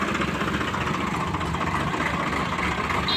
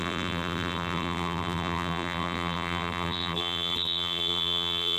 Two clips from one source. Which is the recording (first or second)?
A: first